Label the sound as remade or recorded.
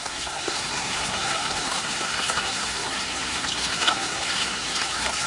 remade